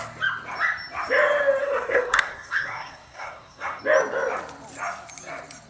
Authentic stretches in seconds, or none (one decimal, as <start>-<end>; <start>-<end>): 0.0-1.6; 3.8-5.7